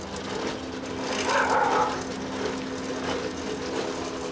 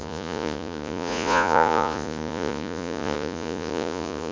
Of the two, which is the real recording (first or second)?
first